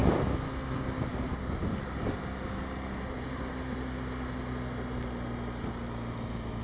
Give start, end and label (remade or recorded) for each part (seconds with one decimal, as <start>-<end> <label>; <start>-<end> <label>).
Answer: 0.0-6.6 recorded